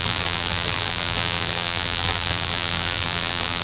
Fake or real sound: fake